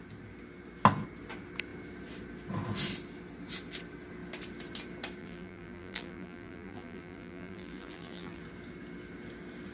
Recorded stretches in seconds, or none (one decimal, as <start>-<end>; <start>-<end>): 0.0-5.2; 8.4-9.7